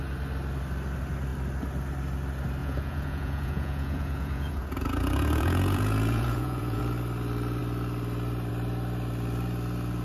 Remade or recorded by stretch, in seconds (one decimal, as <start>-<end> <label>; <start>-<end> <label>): 0.0-2.6 recorded; 2.6-6.8 remade; 6.8-10.0 recorded